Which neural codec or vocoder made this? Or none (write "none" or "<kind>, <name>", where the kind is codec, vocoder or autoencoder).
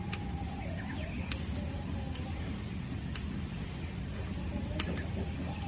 none